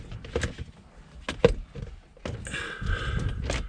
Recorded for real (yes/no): yes